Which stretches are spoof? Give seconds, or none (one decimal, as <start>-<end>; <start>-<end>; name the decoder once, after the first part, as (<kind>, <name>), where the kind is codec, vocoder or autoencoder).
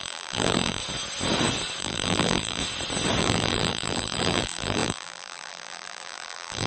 0.0-0.8 (vocoder, BigVGAN v2); 1.8-2.6; 3.2-6.7